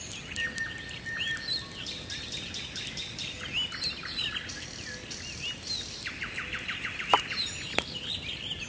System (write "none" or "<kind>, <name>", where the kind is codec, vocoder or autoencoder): none